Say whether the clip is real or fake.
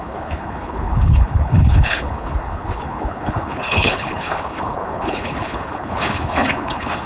fake